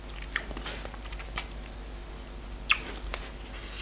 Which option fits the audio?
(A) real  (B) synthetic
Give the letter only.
A